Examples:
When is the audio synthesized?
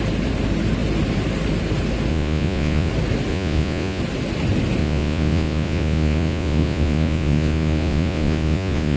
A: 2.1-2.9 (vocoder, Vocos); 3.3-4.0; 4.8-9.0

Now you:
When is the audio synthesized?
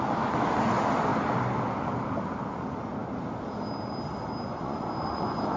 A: 4.5-5.6 (vocoder, Vocos)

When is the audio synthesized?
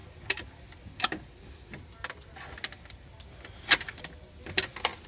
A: none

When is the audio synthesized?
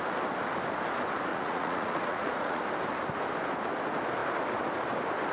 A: 1.3-2.6 (vocoder, Vocos)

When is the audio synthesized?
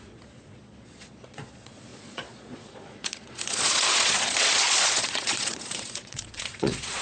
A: 0.0-7.0 (vocoder, Vocos)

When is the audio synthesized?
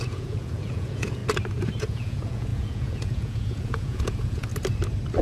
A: 0.0-1.2 (vocoder, Vocos); 1.8-4.5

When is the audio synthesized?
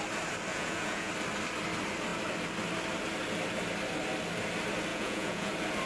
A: 0.5-1.1 (vocoder, Vocos); 4.9-5.5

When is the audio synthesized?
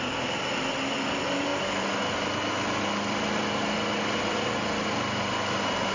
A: none